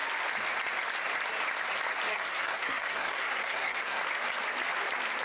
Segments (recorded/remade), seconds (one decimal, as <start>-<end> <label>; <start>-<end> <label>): 0.0-2.1 recorded; 2.1-4.0 remade; 4.0-5.2 recorded